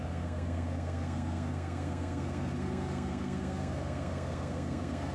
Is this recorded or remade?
remade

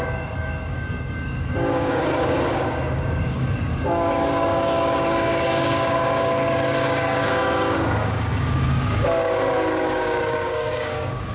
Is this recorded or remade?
remade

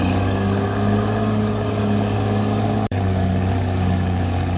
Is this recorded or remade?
remade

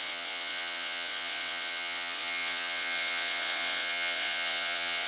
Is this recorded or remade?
remade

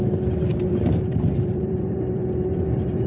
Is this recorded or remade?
remade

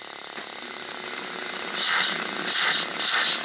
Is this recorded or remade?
recorded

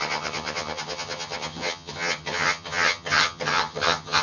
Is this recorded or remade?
remade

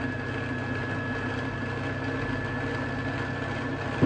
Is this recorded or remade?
recorded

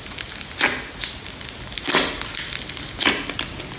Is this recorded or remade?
recorded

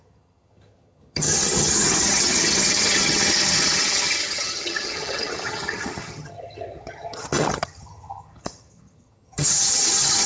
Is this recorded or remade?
remade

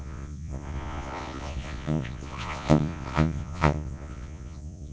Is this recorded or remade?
remade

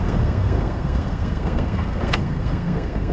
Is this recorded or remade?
remade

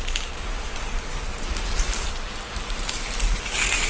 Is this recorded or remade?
remade